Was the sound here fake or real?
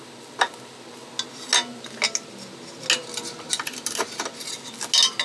real